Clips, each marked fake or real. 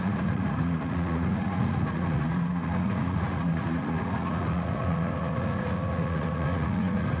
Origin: fake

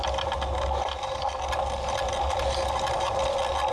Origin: real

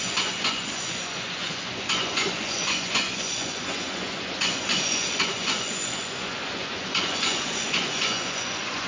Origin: fake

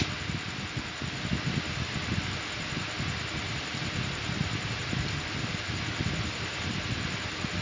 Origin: real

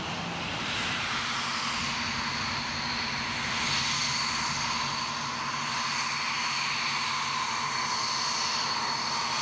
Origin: real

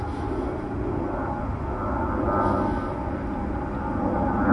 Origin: real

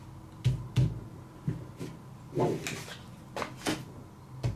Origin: real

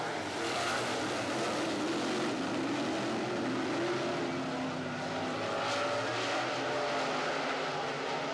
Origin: real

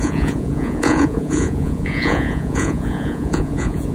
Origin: fake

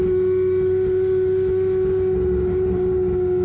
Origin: real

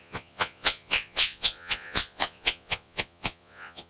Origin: fake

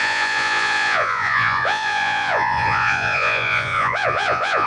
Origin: fake